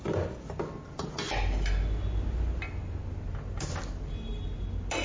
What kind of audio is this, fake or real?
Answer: real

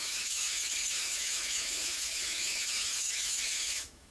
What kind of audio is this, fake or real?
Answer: fake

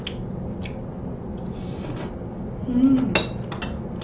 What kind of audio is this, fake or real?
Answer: real